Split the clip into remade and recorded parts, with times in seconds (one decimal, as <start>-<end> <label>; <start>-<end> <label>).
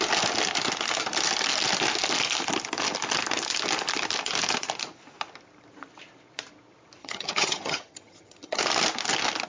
0.0-7.0 recorded; 7.0-8.6 remade; 8.6-9.5 recorded